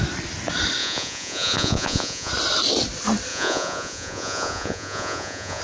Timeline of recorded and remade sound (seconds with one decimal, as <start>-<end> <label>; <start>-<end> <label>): 0.0-0.8 recorded; 0.8-2.3 remade; 2.3-3.3 recorded; 3.3-5.6 remade